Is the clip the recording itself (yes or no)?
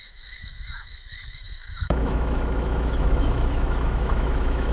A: no